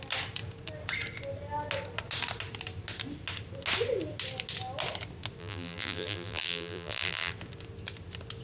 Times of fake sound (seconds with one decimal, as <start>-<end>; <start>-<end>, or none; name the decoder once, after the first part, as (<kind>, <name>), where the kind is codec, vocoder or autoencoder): 5.4-7.3 (vocoder, BigVGAN v2)